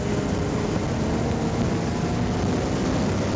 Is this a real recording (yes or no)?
yes